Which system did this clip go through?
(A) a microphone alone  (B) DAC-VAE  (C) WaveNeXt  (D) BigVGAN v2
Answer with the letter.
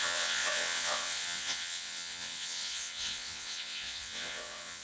C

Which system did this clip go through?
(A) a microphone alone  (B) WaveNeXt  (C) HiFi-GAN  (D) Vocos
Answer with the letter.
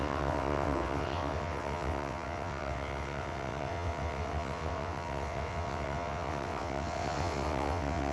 B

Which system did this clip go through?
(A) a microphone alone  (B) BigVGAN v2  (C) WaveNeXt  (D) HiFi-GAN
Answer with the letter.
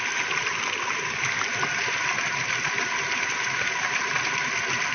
A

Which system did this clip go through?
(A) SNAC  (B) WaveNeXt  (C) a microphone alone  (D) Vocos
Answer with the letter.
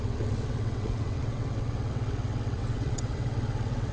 B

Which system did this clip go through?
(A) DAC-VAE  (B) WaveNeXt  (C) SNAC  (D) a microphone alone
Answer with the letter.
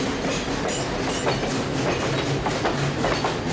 D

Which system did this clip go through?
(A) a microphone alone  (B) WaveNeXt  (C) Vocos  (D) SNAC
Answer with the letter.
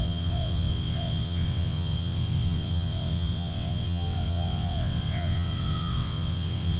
B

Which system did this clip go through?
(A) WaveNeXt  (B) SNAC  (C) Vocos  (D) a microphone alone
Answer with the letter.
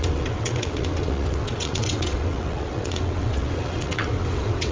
A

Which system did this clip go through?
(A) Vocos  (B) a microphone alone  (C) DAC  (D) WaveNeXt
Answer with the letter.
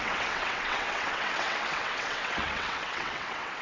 D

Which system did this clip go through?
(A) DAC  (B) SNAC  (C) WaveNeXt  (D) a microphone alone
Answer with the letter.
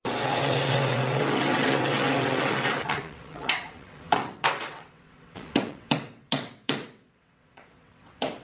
C